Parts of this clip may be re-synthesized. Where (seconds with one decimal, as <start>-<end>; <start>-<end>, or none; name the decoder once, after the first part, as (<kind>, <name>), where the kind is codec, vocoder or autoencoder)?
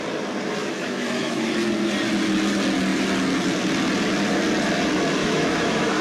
0.6-1.5 (autoencoder, DAC-VAE); 5.2-6.0